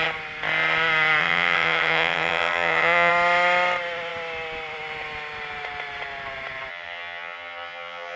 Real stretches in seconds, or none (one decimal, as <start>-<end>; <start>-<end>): 0.0-1.2; 3.1-6.7